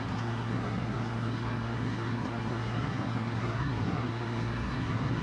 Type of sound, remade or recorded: remade